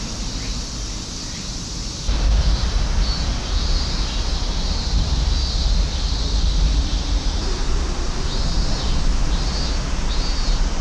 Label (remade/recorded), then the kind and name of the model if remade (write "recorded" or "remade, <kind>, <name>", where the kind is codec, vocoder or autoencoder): recorded